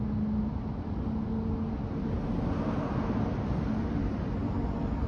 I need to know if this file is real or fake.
real